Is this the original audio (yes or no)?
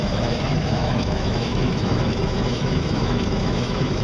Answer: no